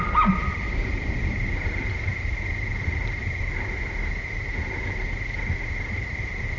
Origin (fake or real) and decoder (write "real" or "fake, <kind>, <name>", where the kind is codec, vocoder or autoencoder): real